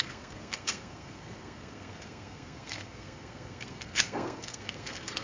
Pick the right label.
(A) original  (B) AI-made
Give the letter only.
B